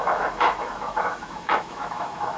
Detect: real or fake fake